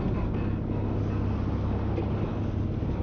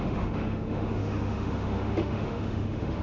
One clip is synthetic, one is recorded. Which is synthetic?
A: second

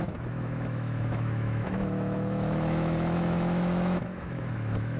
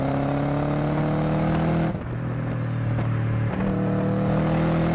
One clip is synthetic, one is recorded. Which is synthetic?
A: first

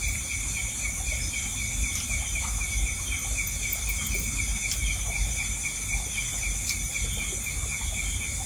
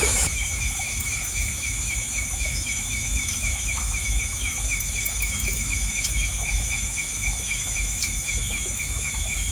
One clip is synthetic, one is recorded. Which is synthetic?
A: second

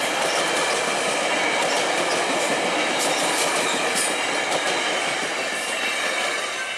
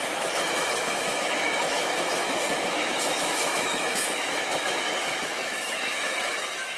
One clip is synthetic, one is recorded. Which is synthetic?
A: second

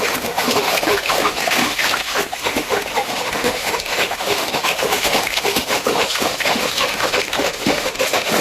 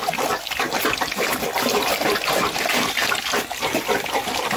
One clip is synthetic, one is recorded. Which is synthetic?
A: first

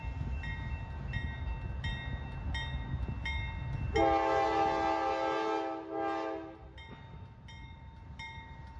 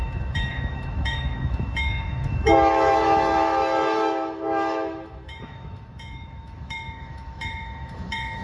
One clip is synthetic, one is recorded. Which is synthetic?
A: second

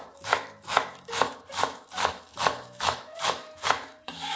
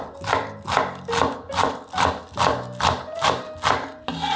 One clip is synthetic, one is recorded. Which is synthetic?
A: first